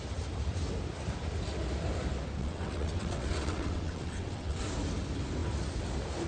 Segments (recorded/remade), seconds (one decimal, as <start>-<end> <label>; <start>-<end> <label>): 0.0-2.4 recorded; 2.4-4.6 remade; 4.6-6.3 recorded